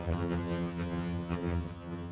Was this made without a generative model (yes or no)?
no